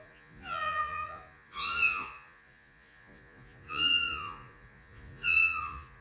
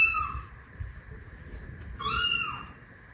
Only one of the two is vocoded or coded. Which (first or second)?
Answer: first